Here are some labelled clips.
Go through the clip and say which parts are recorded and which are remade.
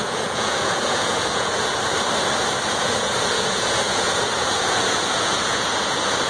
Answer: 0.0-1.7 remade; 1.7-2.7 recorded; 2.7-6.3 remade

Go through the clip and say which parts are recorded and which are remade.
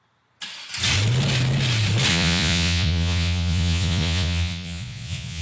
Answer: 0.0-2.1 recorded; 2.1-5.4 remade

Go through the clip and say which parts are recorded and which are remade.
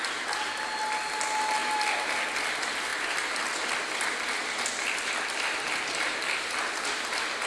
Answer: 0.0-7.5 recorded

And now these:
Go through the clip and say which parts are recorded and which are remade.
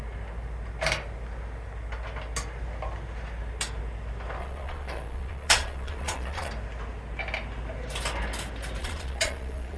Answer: 0.0-4.4 recorded; 4.4-6.5 remade; 6.5-8.8 recorded; 8.8-9.8 remade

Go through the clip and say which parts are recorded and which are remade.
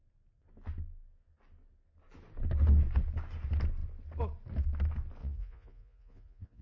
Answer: 0.0-5.2 recorded; 5.2-6.6 remade